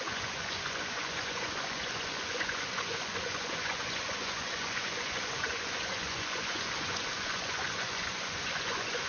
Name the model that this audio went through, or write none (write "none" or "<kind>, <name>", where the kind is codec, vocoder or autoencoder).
vocoder, Vocos